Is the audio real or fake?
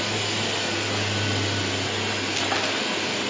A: real